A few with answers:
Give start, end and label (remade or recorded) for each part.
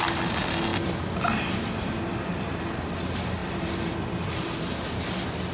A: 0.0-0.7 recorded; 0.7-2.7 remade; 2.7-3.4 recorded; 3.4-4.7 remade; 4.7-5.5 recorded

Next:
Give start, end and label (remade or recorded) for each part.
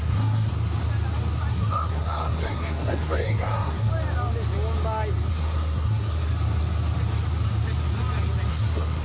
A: 0.0-0.5 remade; 0.5-1.5 recorded; 1.5-3.9 remade; 3.9-5.3 recorded; 5.3-6.3 remade; 6.3-8.5 recorded; 8.5-9.0 remade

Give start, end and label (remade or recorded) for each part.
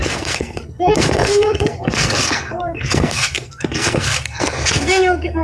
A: 0.0-5.4 remade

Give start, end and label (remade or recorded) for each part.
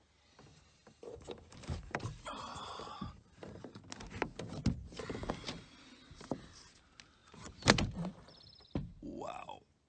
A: 0.0-0.5 recorded; 0.5-3.8 remade; 3.8-9.9 recorded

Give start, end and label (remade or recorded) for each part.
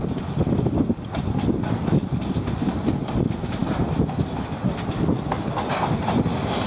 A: 0.0-6.7 recorded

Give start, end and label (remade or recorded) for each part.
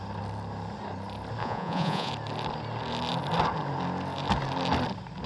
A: 0.0-1.4 recorded; 1.4-2.1 remade; 2.1-5.3 recorded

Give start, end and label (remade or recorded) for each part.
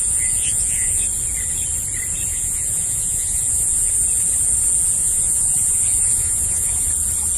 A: 0.0-1.0 remade; 1.0-2.3 recorded; 2.3-3.9 remade; 3.9-5.0 recorded; 5.0-6.9 remade; 6.9-7.4 recorded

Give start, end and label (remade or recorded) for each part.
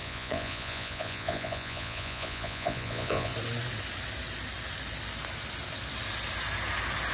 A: 0.0-3.3 remade; 3.3-7.1 recorded